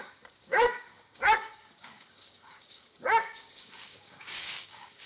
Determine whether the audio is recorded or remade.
remade